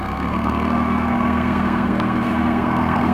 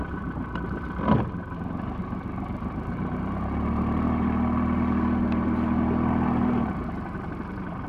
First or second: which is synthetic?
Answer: first